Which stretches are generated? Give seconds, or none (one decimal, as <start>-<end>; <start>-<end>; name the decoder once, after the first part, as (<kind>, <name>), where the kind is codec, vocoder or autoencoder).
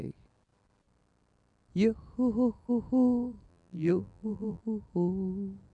3.5-4.6 (vocoder, BigVGAN v2)